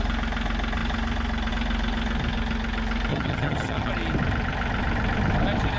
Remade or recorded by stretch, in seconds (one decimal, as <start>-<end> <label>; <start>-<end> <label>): 0.0-3.1 recorded; 3.1-3.9 remade; 3.9-5.8 recorded